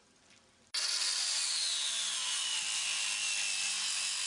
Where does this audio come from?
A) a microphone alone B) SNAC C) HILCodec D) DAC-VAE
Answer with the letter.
A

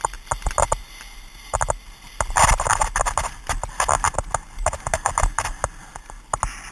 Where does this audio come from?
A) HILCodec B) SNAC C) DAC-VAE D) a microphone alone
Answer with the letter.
D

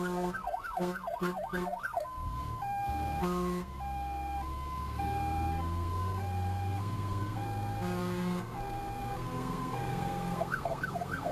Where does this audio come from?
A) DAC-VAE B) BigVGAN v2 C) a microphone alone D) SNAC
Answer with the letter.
D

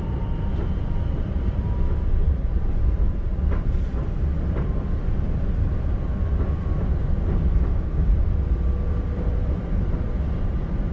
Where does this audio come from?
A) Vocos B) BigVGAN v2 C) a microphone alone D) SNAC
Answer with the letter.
C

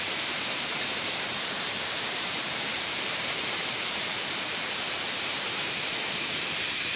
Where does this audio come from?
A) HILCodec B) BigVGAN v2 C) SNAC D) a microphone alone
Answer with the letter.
B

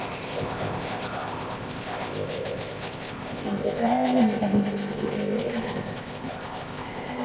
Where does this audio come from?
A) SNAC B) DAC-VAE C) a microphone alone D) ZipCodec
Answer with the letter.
D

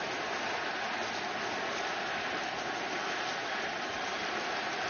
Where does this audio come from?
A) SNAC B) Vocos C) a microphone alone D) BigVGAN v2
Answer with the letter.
C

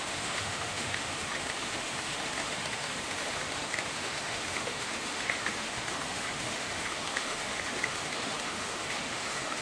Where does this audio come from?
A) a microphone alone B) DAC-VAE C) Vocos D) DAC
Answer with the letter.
B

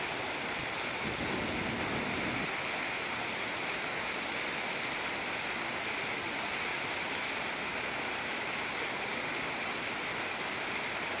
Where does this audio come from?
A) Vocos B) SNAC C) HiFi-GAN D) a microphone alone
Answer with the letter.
D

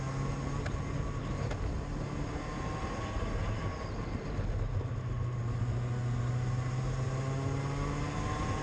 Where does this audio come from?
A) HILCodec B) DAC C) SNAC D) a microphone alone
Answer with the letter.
D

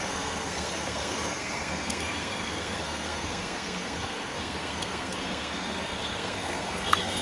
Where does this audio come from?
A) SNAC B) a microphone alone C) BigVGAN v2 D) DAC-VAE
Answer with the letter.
A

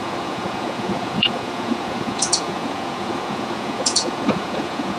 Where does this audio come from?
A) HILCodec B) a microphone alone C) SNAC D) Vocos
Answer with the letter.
D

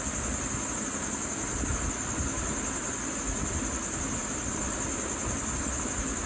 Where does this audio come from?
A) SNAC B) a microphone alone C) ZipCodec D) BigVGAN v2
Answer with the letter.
B